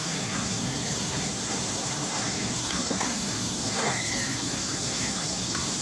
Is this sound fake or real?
fake